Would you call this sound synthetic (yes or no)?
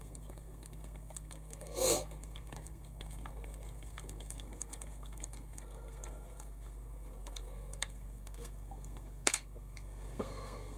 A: yes